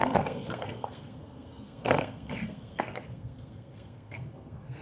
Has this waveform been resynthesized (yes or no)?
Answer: yes